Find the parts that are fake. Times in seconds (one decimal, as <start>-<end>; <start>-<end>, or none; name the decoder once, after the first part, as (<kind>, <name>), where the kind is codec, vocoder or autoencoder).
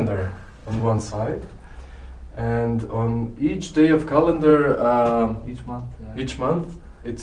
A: 0.6-1.9 (vocoder, BigVGAN v2)